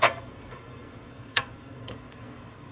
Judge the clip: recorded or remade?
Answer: remade